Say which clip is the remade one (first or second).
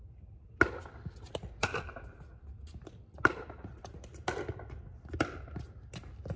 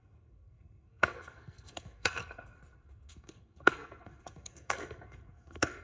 second